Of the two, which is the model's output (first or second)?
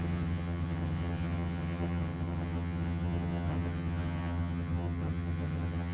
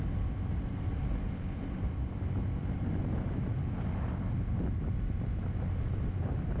first